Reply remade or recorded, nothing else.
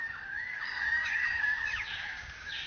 remade